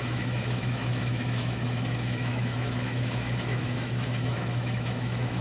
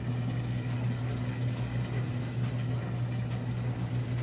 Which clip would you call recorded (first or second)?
second